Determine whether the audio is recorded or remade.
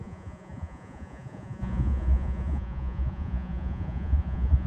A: remade